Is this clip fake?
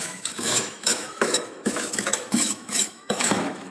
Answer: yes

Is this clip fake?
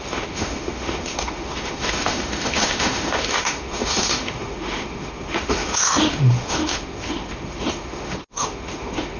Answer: yes